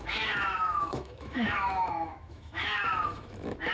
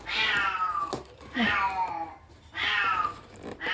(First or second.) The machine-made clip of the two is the first